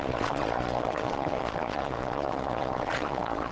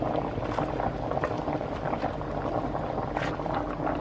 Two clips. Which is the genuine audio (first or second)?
second